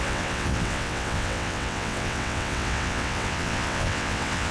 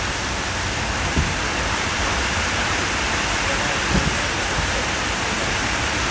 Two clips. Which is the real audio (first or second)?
second